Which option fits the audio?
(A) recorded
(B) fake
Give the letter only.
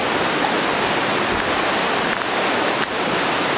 A